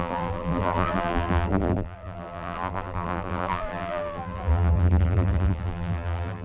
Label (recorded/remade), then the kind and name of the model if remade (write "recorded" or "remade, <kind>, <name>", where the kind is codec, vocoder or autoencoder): remade, vocoder, BigVGAN v2